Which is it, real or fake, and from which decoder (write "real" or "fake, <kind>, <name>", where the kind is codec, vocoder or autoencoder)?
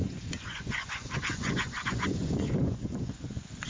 fake, vocoder, Vocos